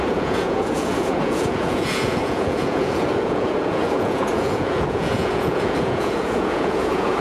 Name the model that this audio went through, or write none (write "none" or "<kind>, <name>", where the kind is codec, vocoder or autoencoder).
vocoder, Vocos